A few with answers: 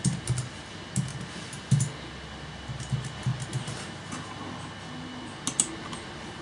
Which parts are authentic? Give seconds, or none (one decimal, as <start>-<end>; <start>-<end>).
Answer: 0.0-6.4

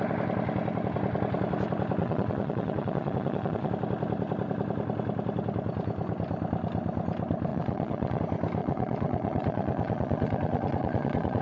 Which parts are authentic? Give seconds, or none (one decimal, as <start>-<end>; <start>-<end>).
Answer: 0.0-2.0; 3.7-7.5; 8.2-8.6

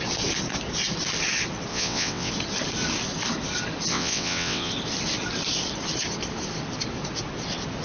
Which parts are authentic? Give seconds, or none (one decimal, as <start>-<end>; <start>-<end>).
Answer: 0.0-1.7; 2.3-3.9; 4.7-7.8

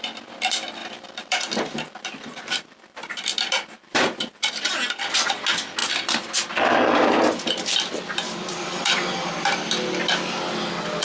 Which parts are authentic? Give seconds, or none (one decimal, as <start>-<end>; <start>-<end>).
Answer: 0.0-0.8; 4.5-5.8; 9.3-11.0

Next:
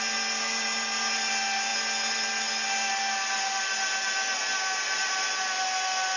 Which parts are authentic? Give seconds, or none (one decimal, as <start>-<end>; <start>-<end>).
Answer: 0.0-6.2

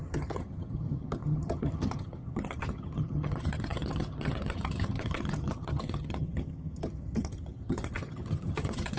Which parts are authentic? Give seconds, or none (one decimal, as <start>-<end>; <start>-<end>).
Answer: none

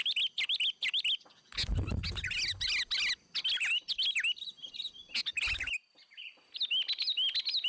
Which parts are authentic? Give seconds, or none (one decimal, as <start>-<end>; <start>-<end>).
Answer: 0.0-7.7